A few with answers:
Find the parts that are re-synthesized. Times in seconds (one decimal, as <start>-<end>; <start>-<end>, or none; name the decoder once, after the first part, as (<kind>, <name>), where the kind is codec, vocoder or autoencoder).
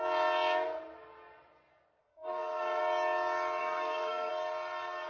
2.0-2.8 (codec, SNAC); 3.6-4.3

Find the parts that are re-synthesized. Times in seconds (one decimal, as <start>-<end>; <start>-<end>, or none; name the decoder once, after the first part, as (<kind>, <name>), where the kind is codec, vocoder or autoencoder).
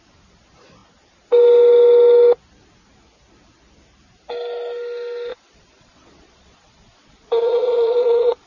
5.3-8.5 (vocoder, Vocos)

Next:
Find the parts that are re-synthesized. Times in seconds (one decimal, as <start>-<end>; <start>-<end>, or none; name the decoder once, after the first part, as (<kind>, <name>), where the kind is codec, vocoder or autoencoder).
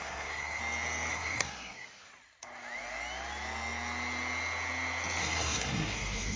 0.0-0.6 (codec, SNAC); 1.1-2.1; 5.2-6.4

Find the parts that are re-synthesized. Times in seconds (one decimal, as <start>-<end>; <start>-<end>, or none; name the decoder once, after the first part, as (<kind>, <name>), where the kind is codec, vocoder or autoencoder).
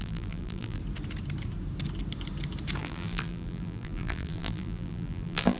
0.0-0.8 (vocoder, BigVGAN v2); 2.8-5.6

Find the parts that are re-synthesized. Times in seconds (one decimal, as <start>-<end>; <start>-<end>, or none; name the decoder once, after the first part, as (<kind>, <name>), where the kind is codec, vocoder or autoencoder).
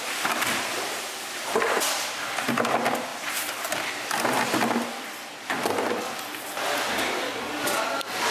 none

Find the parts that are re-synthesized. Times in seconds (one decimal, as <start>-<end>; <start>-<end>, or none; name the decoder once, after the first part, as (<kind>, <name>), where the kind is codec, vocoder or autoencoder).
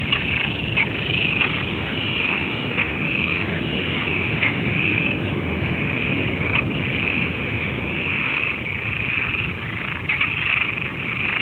1.7-6.1 (autoencoder, DAC-VAE); 7.1-8.4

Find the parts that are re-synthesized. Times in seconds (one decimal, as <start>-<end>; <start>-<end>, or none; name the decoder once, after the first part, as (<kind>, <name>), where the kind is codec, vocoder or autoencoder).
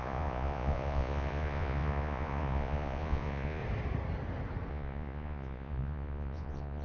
0.0-3.6 (vocoder, Vocos); 4.7-6.8